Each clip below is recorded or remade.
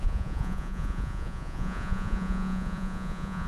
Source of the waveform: remade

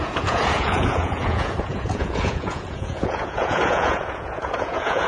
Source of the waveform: remade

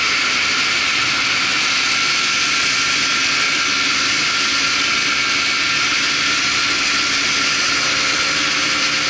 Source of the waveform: recorded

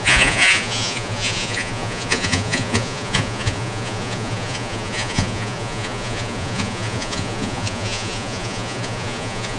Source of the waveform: remade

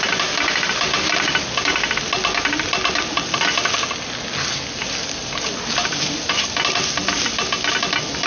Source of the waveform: recorded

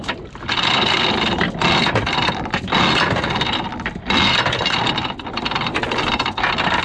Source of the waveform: recorded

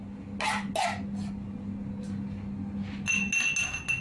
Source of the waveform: recorded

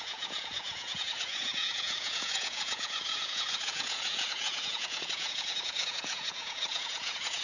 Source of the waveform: remade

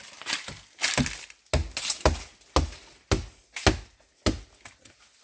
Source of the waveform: recorded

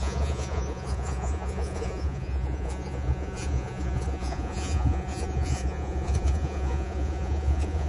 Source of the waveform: remade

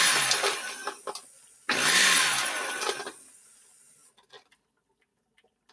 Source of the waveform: recorded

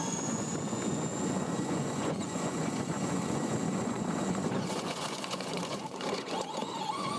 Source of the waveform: remade